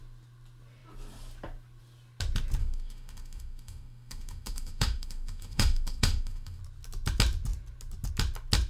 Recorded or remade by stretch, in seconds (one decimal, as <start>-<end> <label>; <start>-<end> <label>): 0.0-2.6 recorded; 2.6-6.6 remade; 6.6-8.7 recorded